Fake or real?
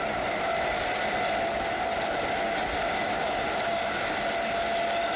real